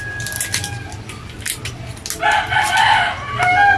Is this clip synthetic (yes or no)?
no